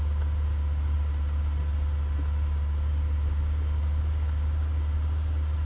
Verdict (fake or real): real